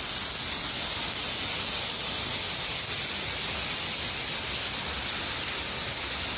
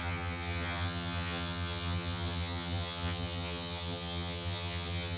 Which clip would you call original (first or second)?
first